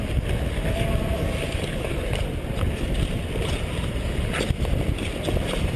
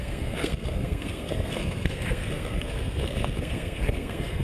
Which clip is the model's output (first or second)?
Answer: second